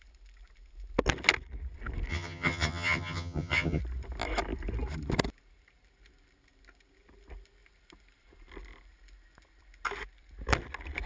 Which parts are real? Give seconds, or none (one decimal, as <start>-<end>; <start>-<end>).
0.0-2.1; 3.8-11.1